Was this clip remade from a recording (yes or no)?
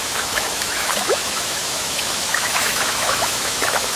yes